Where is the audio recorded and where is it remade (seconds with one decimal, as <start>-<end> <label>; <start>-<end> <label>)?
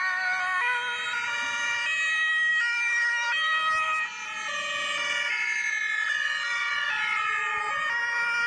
0.0-2.5 recorded; 2.5-3.3 remade; 3.3-8.5 recorded